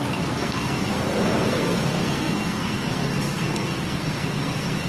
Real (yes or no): no